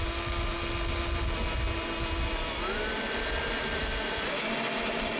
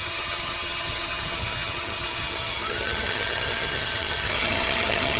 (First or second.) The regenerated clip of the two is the second